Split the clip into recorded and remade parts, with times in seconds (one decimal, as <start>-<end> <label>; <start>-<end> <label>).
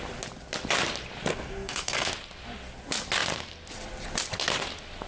0.0-1.3 recorded; 1.3-2.1 remade; 2.1-5.1 recorded